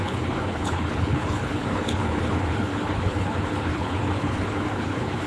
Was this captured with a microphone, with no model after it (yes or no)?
no